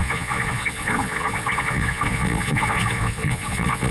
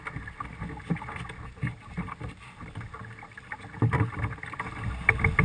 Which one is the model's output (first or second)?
first